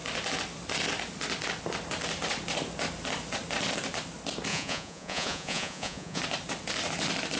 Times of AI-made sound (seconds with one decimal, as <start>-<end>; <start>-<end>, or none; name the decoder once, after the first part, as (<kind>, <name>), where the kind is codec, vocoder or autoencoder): 4.5-6.2 (vocoder, Vocos)